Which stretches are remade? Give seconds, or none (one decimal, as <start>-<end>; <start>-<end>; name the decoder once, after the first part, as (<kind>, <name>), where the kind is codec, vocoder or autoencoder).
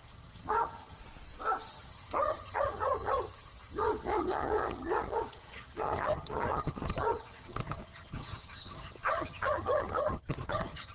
0.0-1.0 (vocoder, HiFi-GAN); 1.7-10.9